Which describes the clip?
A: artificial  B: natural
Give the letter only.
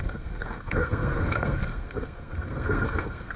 A